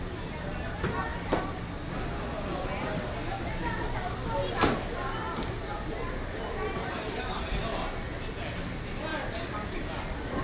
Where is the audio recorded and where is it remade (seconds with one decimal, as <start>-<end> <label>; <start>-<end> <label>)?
0.0-6.8 recorded; 6.8-7.4 remade; 7.4-9.1 recorded; 9.1-10.0 remade; 10.0-10.4 recorded